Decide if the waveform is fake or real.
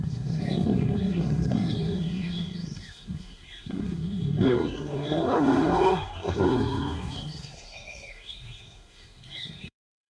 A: fake